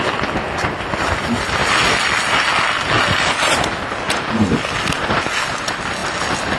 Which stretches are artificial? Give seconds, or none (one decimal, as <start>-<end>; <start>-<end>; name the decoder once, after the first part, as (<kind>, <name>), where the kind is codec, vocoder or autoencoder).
none